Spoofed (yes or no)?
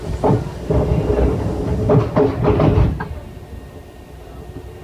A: no